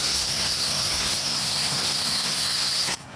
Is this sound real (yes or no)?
no